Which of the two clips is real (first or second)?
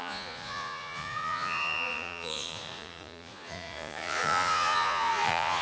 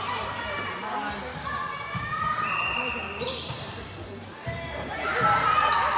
second